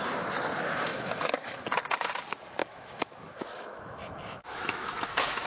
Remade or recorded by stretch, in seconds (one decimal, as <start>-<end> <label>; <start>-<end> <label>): 0.0-0.9 recorded; 0.9-1.6 remade; 1.6-2.6 recorded; 2.6-5.5 remade